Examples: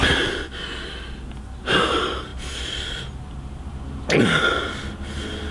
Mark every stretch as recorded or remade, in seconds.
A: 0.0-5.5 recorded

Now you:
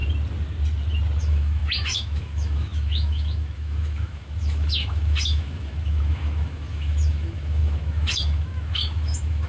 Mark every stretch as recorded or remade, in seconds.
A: 0.0-1.2 recorded; 1.2-9.5 remade

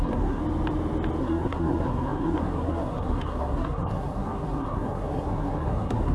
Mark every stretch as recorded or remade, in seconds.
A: 0.0-0.4 remade; 0.4-1.2 recorded; 1.2-6.1 remade

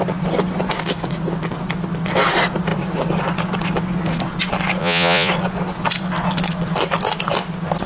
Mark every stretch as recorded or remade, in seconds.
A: 0.0-4.8 recorded; 4.8-5.3 remade; 5.3-7.9 recorded